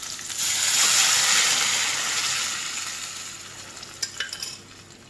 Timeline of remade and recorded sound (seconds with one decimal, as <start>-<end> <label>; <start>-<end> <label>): 0.0-5.1 recorded